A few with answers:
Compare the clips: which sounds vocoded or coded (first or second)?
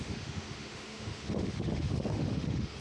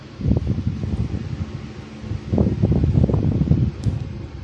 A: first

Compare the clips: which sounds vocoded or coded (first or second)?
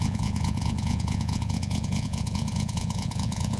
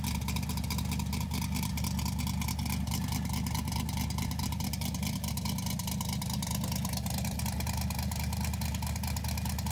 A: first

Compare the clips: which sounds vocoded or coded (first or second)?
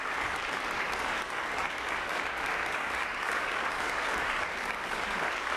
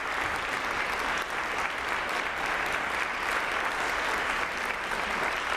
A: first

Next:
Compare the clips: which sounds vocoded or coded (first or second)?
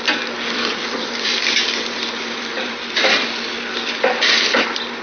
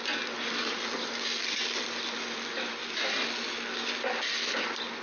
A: first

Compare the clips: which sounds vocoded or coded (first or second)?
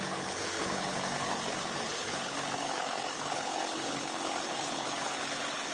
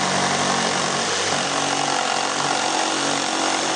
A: first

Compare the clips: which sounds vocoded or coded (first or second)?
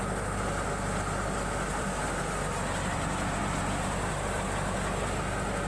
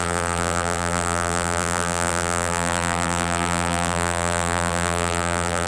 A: second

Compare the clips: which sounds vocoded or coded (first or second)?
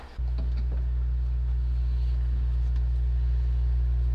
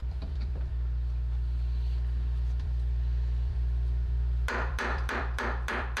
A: second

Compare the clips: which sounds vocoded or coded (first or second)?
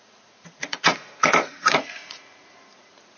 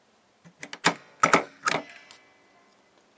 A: first